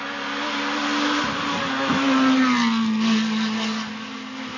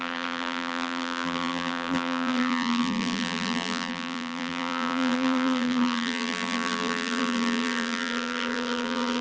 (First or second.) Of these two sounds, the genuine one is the first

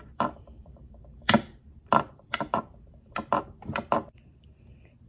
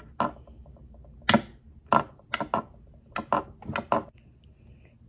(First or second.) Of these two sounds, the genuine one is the second